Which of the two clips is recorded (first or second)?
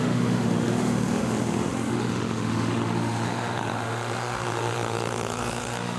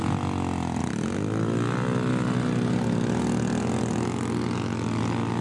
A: second